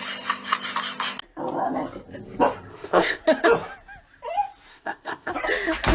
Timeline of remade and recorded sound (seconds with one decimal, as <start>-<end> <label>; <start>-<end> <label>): 0.0-2.7 recorded; 2.7-3.2 remade; 3.2-4.7 recorded; 4.7-5.3 remade; 5.3-5.9 recorded